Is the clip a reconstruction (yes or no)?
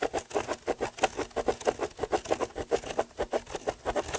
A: no